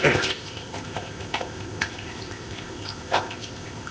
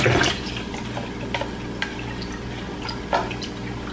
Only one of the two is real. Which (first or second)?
second